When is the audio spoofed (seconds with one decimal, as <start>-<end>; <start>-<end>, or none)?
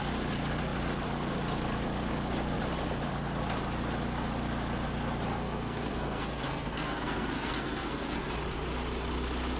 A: 5.3-8.3